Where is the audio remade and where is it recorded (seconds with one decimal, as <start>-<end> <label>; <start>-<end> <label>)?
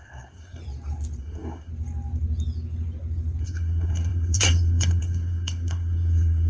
0.0-0.6 remade; 0.6-1.2 recorded; 1.2-1.7 remade; 1.7-3.4 recorded; 3.4-6.5 remade